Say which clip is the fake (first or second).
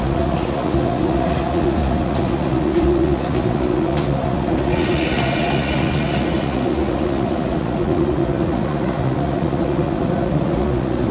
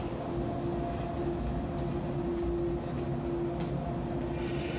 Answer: first